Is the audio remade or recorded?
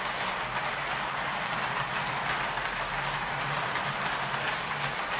recorded